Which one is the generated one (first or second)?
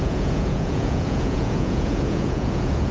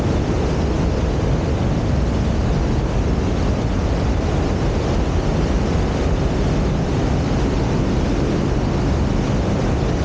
first